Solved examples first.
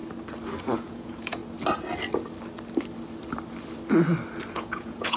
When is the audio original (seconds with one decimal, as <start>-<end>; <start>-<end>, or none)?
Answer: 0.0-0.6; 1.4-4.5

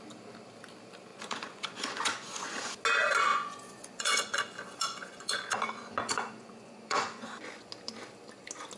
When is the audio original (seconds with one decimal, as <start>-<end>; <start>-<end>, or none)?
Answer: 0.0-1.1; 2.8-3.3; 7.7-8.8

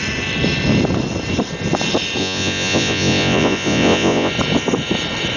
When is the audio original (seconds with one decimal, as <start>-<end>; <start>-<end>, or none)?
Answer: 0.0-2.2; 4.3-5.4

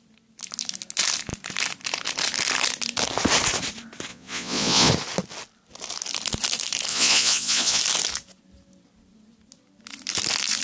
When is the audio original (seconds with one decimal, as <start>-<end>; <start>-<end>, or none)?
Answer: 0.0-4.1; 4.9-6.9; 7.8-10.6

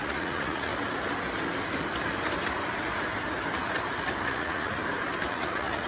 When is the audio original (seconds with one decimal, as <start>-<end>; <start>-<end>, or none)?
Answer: 0.7-4.2; 4.8-5.3